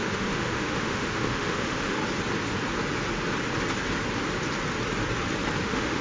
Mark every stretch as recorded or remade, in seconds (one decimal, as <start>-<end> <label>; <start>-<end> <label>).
0.0-2.0 remade; 2.0-5.6 recorded; 5.6-6.0 remade